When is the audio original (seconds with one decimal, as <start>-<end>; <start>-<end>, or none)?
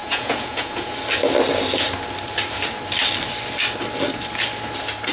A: 0.9-5.1